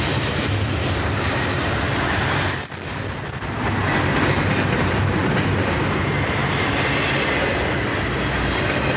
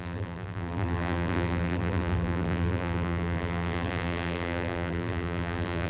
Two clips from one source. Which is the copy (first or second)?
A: second